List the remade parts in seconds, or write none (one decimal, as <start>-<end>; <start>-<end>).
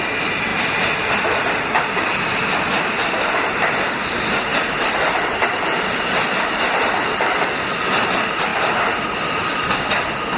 none